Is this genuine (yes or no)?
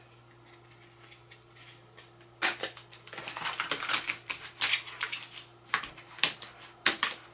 yes